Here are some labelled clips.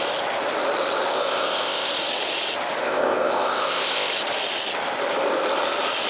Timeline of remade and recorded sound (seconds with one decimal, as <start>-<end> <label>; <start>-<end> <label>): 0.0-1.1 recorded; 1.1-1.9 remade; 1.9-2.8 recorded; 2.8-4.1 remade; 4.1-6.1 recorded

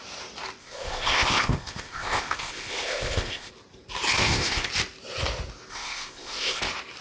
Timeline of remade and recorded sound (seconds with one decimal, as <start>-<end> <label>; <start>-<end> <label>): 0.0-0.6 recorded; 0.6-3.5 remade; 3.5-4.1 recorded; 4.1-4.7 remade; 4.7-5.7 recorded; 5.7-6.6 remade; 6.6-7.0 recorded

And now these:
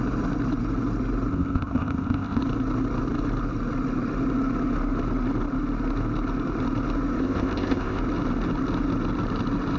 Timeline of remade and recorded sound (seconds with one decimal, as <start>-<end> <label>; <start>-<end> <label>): 0.0-1.3 recorded; 1.3-2.4 remade; 2.4-7.2 recorded; 7.2-8.0 remade; 8.0-9.8 recorded